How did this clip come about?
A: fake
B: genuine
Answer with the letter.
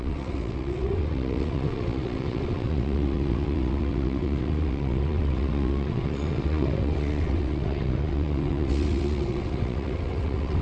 A